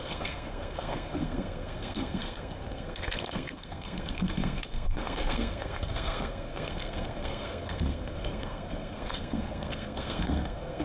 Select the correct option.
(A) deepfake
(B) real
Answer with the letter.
A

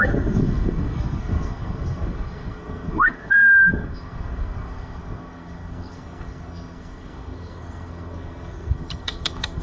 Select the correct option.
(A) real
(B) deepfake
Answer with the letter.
B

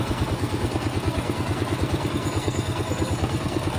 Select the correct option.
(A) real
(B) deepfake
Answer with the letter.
B